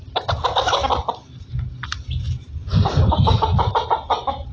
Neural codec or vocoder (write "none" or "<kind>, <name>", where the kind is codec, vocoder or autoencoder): none